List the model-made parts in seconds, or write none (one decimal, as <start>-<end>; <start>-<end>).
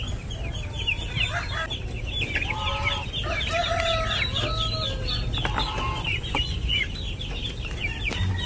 6.1-6.8